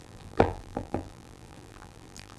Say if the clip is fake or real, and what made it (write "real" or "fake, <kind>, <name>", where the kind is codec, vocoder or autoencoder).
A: fake, vocoder, BigVGAN v2